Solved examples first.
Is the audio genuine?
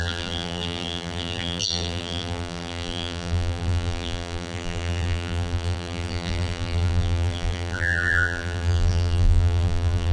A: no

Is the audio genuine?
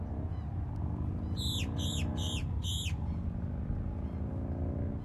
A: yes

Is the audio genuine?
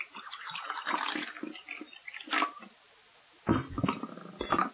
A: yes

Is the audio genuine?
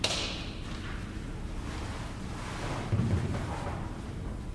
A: yes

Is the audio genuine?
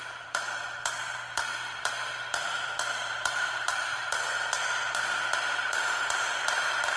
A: no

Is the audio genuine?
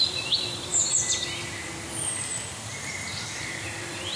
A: no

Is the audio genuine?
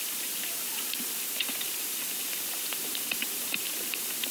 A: no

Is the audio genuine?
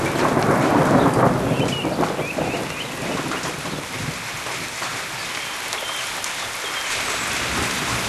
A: yes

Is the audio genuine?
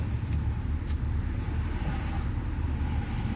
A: no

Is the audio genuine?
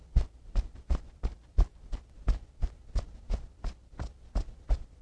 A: yes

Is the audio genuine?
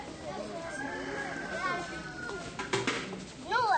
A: yes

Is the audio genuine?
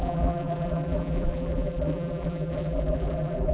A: no